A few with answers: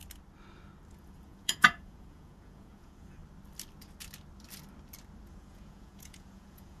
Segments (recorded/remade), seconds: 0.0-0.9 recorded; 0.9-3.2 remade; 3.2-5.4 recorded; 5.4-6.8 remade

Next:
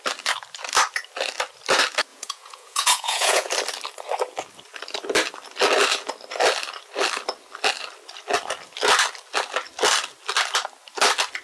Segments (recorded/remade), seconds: 0.0-2.1 recorded; 2.1-3.5 remade; 3.5-11.4 recorded